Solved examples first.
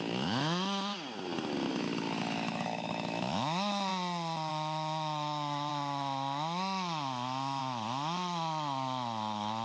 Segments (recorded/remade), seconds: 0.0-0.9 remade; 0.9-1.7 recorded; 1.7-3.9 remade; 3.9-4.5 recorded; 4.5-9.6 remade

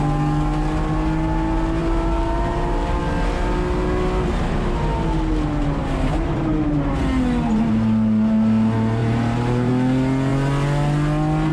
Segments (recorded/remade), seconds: 0.0-1.8 recorded; 1.8-3.0 remade; 3.0-5.8 recorded; 5.8-6.9 remade; 6.9-9.0 recorded; 9.0-9.7 remade; 9.7-11.5 recorded

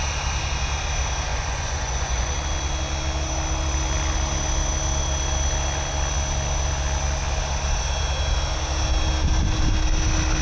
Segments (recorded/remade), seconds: 0.0-1.3 recorded; 1.3-2.3 remade; 2.3-10.4 recorded